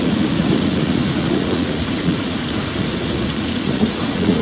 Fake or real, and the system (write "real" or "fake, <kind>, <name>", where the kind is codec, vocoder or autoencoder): fake, vocoder, Vocos